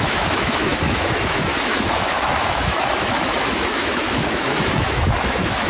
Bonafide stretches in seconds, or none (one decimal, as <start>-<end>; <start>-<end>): none